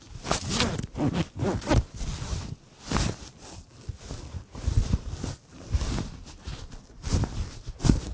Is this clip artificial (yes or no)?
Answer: no